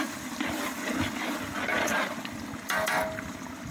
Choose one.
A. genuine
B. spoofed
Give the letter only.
A